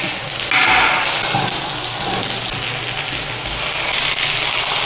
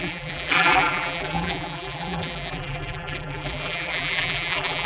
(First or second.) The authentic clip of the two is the first